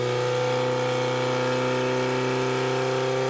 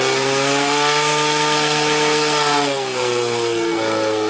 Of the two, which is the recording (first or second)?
first